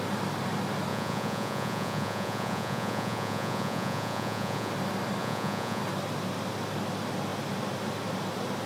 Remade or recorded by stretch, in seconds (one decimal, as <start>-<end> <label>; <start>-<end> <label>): 0.0-0.9 recorded; 0.9-4.7 remade; 4.7-5.2 recorded; 5.2-5.8 remade; 5.8-8.7 recorded